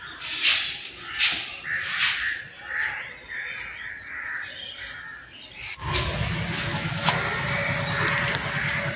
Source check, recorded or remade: recorded